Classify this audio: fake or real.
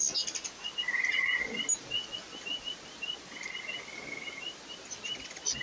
real